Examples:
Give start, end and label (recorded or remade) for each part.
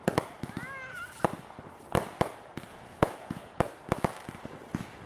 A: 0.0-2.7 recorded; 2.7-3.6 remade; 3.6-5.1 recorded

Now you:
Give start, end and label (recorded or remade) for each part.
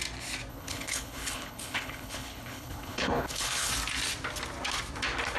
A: 0.0-0.5 recorded; 0.5-3.7 remade; 3.7-5.4 recorded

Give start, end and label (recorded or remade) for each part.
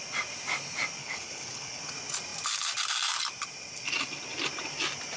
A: 0.0-1.0 recorded; 1.0-1.8 remade; 1.8-5.2 recorded